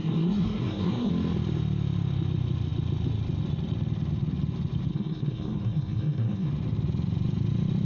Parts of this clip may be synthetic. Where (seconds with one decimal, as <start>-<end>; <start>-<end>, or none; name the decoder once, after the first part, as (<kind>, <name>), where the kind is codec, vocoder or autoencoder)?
0.0-1.1 (codec, SNAC); 4.9-6.5